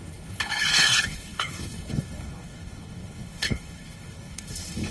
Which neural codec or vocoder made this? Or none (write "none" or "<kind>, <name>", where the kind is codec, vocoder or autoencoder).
codec, HILCodec